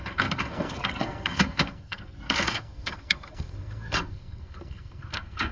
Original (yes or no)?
no